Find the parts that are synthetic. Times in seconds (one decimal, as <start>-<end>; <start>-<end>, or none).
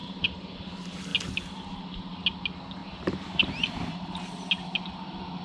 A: 0.0-0.5; 2.8-4.3